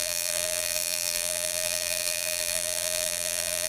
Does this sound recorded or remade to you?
remade